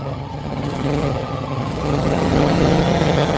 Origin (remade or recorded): remade